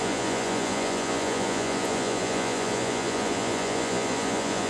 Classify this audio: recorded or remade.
remade